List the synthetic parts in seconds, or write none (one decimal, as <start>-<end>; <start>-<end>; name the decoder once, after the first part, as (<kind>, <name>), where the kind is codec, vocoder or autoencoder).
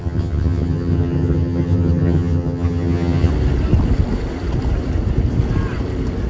0.0-3.3 (vocoder, HiFi-GAN)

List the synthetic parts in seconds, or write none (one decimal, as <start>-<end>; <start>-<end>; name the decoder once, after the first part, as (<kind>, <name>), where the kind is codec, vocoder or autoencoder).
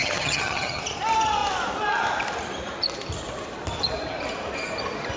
0.0-0.8 (vocoder, HiFi-GAN)